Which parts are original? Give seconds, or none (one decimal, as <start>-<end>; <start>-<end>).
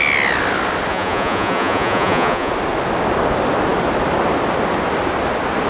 0.0-0.9; 2.5-5.7